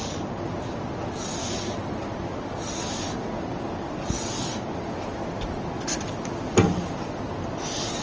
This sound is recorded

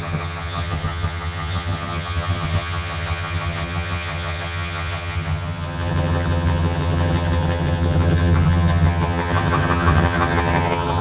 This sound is remade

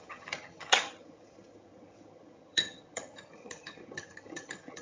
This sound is remade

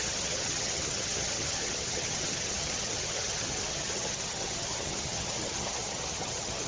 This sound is remade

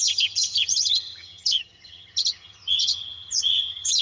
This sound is remade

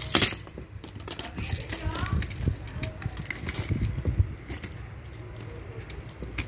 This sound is recorded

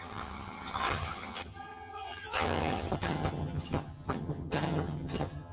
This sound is remade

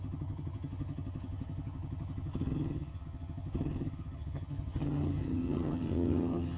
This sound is remade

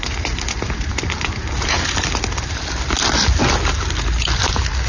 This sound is recorded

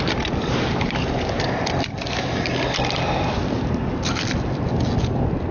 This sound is recorded